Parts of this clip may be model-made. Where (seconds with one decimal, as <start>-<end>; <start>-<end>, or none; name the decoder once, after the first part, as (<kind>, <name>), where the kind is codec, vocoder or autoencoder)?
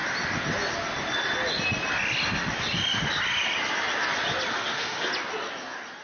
4.5-5.1 (autoencoder, DAC-VAE)